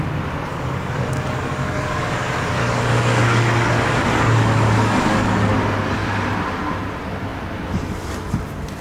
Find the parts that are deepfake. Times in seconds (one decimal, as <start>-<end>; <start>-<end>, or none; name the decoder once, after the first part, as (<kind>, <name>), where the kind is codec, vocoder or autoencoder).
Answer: 0.5-5.5 (codec, DAC)